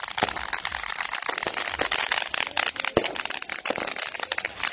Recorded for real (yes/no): yes